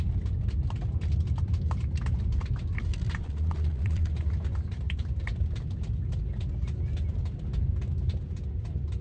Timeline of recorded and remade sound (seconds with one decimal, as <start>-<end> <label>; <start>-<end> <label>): 0.0-3.2 recorded; 3.2-4.1 remade; 4.1-9.0 recorded